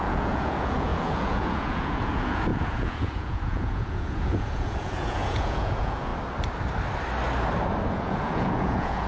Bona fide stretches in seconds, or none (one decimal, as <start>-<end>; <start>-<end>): 6.1-7.9

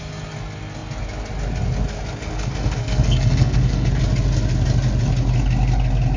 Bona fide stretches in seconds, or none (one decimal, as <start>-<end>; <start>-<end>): 0.0-2.2; 3.9-6.2